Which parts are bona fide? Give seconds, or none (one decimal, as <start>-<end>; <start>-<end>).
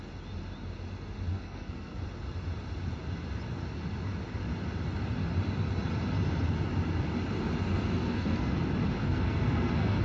0.0-1.3; 2.0-8.0; 8.5-9.0